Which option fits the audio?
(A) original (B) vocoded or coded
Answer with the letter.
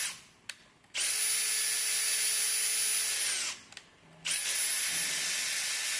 A